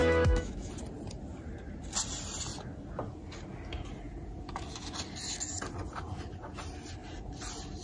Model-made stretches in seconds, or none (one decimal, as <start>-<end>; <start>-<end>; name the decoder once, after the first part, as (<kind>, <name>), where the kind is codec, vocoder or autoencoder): 0.0-0.7 (autoencoder, DAC-VAE)